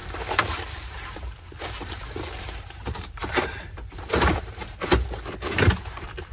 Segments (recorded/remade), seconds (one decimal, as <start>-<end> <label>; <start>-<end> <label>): 0.0-0.7 recorded; 0.7-3.2 remade; 3.2-3.9 recorded; 3.9-6.3 remade